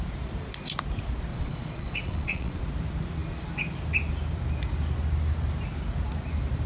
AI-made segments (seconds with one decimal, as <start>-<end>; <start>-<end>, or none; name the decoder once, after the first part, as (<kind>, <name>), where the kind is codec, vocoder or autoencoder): 1.3-2.6 (vocoder, Vocos)